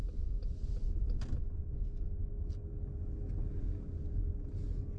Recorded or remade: recorded